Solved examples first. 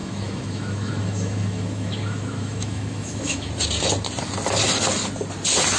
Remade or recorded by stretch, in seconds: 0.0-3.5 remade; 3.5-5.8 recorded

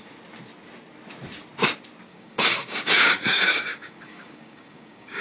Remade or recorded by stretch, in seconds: 0.0-2.1 recorded; 2.1-5.2 remade

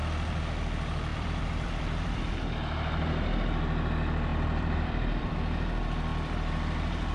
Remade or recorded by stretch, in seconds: 0.0-1.1 recorded; 1.1-2.3 remade; 2.3-4.3 recorded; 4.3-5.3 remade; 5.3-6.1 recorded; 6.1-7.1 remade

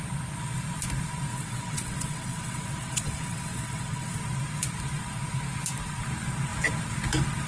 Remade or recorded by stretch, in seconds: 0.0-1.3 recorded; 1.3-4.2 remade; 4.2-7.5 recorded

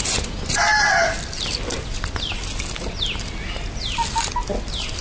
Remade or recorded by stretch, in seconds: 0.0-5.0 recorded

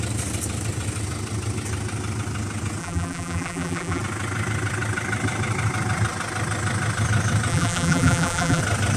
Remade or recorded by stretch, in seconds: 0.0-2.8 recorded; 2.8-4.0 remade; 4.0-7.5 recorded; 7.5-8.6 remade; 8.6-9.0 recorded